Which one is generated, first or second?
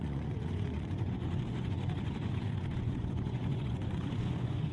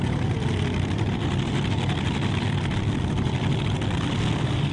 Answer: first